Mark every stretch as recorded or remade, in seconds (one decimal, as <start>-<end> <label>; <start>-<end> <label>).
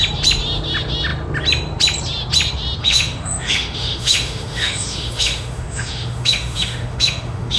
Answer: 0.0-2.8 recorded; 2.8-7.6 remade